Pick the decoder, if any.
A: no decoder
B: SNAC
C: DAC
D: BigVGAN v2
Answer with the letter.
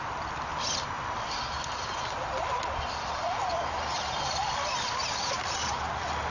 A